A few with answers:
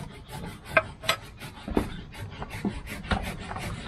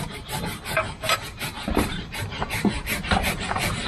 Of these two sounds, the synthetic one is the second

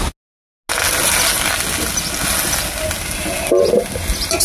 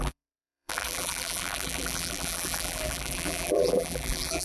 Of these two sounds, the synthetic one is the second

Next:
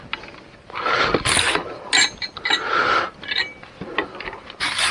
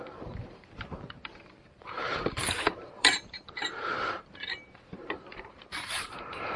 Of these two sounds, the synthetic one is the second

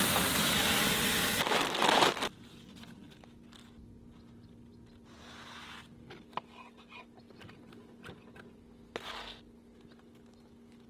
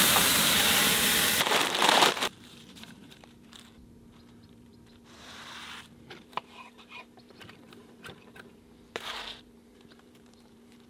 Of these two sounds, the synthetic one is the second